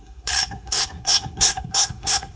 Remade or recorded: remade